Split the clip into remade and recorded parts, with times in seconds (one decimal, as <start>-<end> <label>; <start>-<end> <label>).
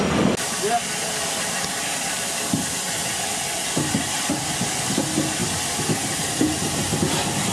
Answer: 0.0-7.5 recorded